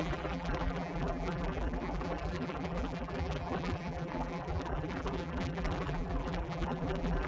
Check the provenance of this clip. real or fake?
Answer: fake